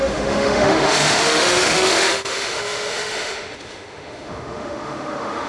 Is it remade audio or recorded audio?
remade